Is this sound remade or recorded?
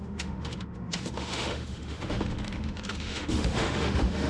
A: remade